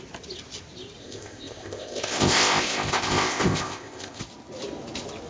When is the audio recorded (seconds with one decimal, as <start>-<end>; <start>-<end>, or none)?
0.0-1.0; 4.2-5.3